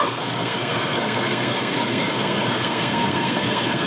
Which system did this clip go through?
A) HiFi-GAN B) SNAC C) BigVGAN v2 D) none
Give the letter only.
B